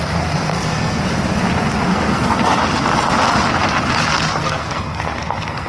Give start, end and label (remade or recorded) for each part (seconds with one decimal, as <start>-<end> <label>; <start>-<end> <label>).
0.0-0.5 recorded; 0.5-1.0 remade; 1.0-1.9 recorded; 1.9-2.6 remade; 2.6-4.3 recorded; 4.3-5.7 remade